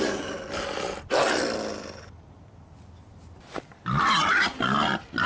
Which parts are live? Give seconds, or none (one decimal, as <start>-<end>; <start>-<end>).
0.0-5.3